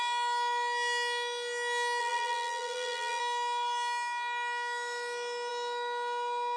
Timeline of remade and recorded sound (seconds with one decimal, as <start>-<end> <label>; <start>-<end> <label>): 0.0-2.0 recorded; 2.0-3.2 remade; 3.2-6.6 recorded